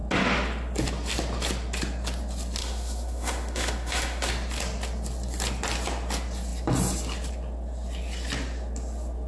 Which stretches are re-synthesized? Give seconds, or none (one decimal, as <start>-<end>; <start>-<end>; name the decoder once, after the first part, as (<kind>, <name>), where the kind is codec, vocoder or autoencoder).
2.6-4.3 (autoencoder, DAC-VAE)